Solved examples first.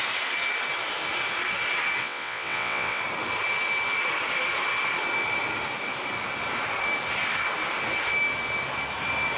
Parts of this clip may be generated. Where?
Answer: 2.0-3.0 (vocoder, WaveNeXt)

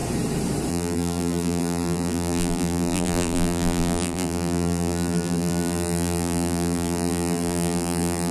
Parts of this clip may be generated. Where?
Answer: 0.7-8.3 (vocoder, BigVGAN v2)

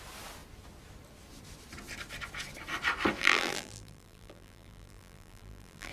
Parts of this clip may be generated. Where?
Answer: 3.2-5.9 (vocoder, BigVGAN v2)